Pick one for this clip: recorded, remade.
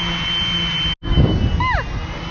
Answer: recorded